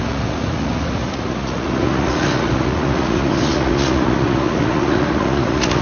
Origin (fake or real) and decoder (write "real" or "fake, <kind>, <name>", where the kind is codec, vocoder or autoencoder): fake, vocoder, Vocos